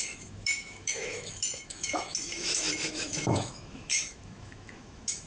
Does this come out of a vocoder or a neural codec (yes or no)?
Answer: yes